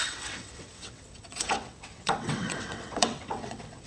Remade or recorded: remade